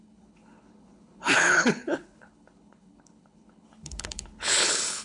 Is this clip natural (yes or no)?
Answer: no